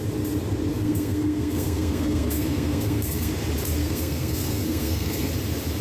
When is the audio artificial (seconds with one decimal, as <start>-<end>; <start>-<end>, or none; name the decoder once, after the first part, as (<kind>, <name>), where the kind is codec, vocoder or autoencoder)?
0.7-3.3 (codec, SNAC); 3.8-5.3